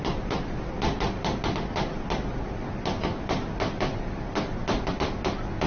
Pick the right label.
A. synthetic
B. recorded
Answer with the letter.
B